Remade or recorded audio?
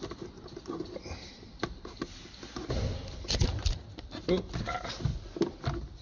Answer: recorded